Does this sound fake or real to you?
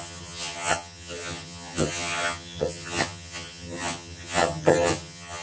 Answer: fake